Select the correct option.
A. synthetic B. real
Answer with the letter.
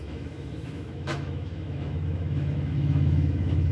A